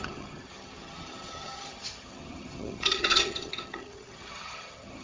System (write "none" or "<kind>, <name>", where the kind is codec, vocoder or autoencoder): vocoder, HiFi-GAN